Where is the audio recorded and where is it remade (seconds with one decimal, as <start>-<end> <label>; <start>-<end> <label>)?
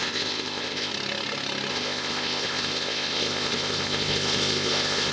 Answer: 0.0-0.9 remade; 0.9-1.7 recorded; 1.7-5.1 remade